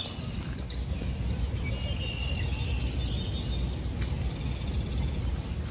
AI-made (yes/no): no